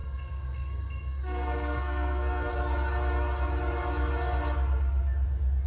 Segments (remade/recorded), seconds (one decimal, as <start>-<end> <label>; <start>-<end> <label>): 0.0-2.5 remade; 2.5-5.7 recorded